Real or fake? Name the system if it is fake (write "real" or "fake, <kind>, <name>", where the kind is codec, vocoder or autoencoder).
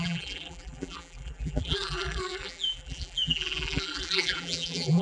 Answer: fake, vocoder, BigVGAN v2